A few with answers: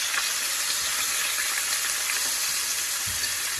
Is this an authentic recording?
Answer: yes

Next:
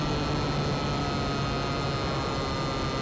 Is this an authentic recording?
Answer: yes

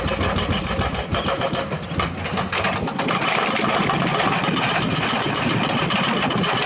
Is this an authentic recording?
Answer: yes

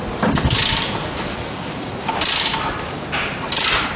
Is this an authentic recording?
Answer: yes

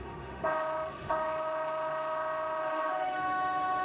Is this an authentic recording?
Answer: no